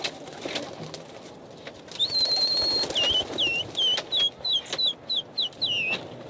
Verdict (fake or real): real